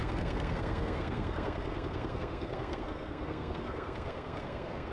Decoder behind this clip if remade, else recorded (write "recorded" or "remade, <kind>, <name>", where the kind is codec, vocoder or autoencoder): remade, codec, SNAC